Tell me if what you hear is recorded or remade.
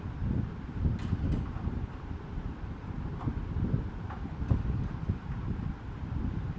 remade